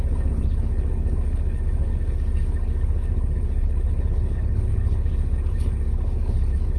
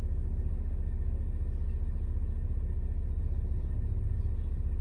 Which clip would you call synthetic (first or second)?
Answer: first